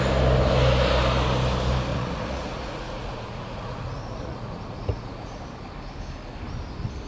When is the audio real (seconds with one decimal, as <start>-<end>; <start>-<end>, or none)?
0.0-1.9; 5.4-7.1